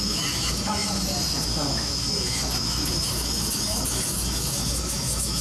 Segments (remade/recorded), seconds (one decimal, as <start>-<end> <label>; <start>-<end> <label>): 0.0-5.4 remade